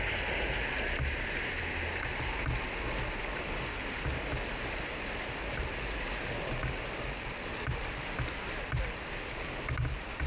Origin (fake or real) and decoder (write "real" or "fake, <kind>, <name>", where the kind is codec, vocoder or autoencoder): real